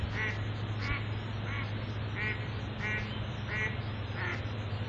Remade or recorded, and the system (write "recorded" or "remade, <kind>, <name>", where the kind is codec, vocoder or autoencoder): recorded